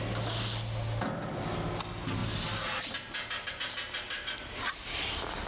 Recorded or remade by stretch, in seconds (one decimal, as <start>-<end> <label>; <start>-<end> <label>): 0.0-5.5 recorded